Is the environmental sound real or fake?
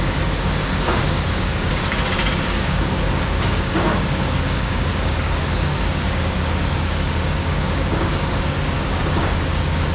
fake